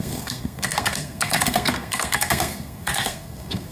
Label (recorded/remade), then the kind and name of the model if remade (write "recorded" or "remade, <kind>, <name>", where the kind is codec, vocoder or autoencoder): remade, codec, SNAC